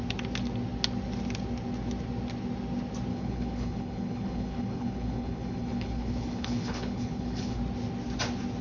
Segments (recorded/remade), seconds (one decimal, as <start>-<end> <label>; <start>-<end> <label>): 0.0-3.1 recorded; 3.1-7.6 remade; 7.6-8.6 recorded